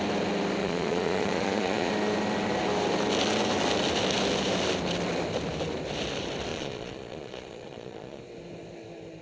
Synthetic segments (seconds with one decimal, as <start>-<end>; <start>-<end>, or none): 0.6-1.9; 6.5-8.2